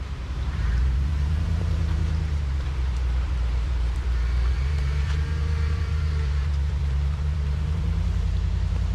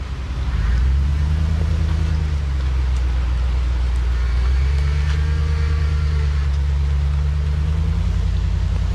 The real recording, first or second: second